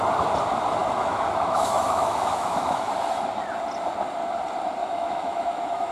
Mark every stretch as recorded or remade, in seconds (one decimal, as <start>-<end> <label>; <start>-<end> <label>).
0.0-0.8 recorded; 0.8-2.9 remade; 2.9-4.8 recorded; 4.8-5.9 remade